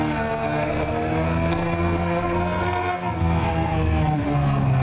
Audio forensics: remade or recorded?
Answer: remade